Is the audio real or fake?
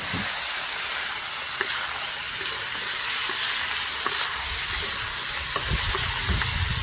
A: real